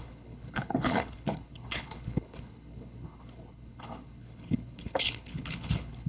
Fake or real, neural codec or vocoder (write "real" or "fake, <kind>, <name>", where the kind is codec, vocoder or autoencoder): fake, codec, HILCodec